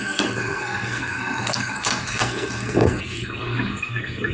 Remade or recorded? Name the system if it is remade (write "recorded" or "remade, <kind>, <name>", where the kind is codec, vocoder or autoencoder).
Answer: remade, codec, SNAC